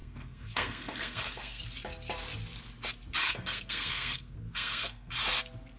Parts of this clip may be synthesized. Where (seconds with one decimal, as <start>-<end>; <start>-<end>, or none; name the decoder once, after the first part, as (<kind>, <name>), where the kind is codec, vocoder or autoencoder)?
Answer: 0.0-1.6 (codec, SNAC); 3.2-5.1